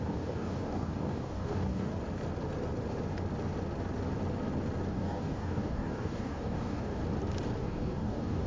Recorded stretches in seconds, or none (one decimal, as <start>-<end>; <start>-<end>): 1.9-4.9; 7.0-7.6